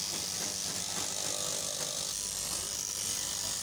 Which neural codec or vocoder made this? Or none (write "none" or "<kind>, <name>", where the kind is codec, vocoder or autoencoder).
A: none